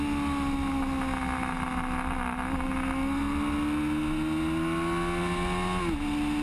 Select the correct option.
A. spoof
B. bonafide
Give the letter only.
B